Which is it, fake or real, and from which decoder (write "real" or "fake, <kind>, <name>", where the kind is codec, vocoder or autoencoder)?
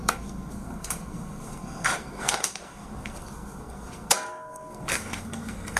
fake, codec, SNAC